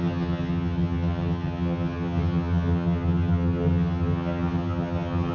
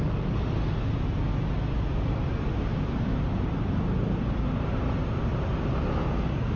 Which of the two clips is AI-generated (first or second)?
first